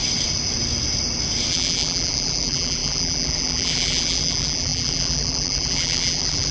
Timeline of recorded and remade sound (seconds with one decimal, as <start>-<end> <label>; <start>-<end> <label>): 0.0-1.5 recorded; 1.5-6.5 remade